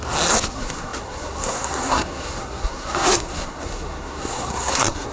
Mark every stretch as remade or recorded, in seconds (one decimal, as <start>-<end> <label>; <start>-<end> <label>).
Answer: 0.0-0.5 recorded; 0.5-5.1 remade